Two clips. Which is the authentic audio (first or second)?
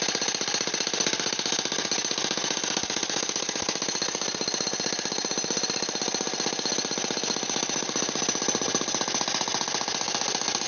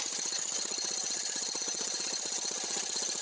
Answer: first